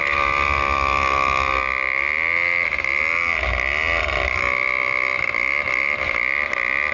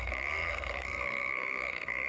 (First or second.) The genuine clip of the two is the first